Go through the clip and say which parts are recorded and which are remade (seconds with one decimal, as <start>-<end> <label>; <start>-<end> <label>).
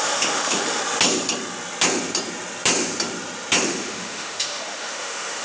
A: 0.0-0.8 remade; 0.8-3.6 recorded; 3.6-5.4 remade